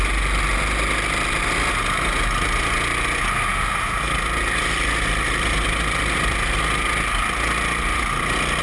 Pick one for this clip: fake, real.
real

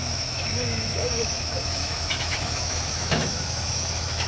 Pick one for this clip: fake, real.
fake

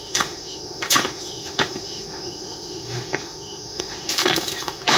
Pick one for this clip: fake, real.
fake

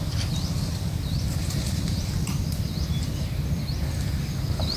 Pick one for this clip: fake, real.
real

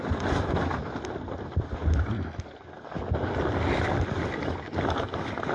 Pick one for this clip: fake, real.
real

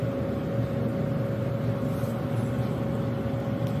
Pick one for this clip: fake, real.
real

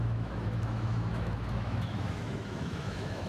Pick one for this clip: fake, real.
fake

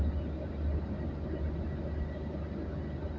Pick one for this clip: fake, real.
real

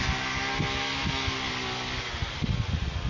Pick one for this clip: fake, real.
real